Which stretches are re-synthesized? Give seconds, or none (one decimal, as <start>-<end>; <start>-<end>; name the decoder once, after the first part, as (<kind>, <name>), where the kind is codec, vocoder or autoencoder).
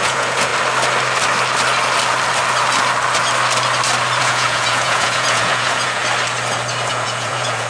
0.0-0.5 (vocoder, Vocos); 4.2-6.0; 6.9-7.7